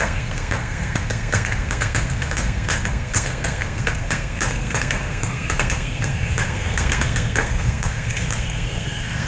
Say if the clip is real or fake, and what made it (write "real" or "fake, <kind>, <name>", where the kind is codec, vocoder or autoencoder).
fake, codec, SNAC